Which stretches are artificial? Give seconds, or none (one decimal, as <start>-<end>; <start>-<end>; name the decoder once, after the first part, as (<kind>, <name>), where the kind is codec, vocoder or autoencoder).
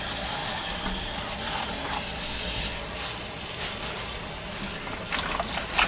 none